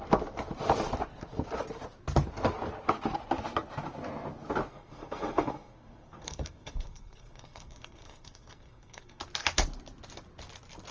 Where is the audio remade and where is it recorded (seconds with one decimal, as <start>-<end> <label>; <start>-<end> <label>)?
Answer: 0.0-4.7 recorded; 4.7-9.2 remade; 9.2-10.9 recorded